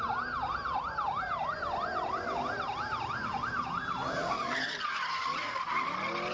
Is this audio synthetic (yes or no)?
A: no